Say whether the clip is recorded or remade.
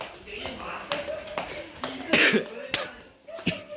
recorded